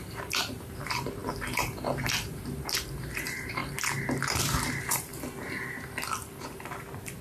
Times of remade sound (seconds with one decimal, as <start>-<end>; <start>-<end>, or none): 0.0-3.6; 4.2-5.1; 6.8-7.2